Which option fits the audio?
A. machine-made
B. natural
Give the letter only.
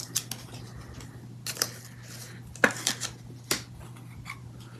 B